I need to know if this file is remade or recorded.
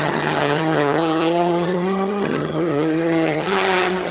remade